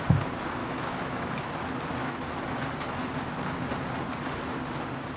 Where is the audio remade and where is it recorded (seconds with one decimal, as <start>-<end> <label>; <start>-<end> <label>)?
0.0-0.6 recorded; 0.6-1.3 remade; 1.3-2.0 recorded; 2.0-2.6 remade; 2.6-5.2 recorded